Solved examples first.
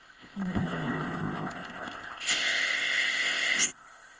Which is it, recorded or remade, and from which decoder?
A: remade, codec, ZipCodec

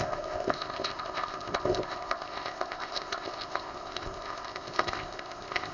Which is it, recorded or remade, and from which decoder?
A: remade, codec, ZipCodec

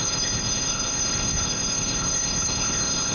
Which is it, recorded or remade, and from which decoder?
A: remade, codec, ZipCodec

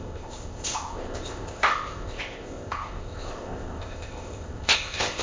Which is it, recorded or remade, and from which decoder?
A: remade, codec, ZipCodec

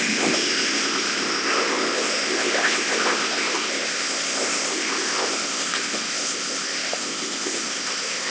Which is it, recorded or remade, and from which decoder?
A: remade, codec, ZipCodec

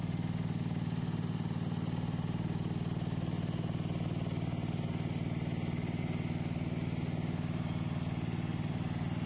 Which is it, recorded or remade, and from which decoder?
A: recorded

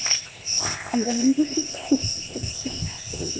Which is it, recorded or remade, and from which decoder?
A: remade, codec, ZipCodec